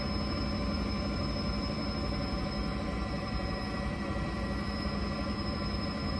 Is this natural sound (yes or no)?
no